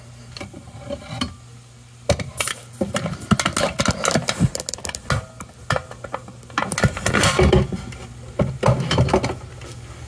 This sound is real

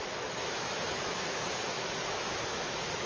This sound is fake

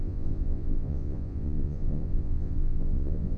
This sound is fake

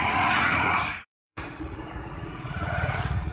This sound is fake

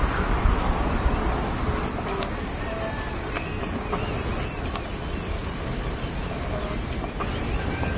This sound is real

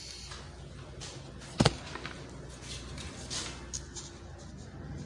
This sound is real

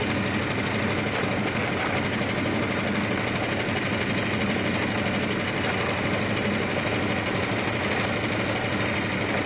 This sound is real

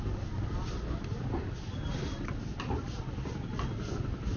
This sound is real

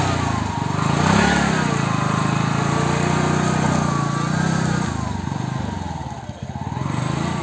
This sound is real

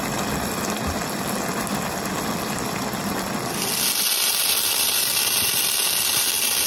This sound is real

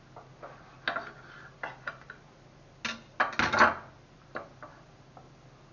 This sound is real